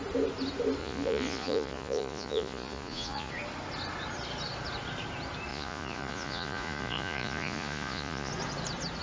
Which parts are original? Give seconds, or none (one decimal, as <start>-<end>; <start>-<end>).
0.0-0.8; 3.3-5.5; 8.3-9.0